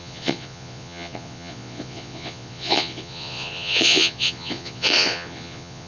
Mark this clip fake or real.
fake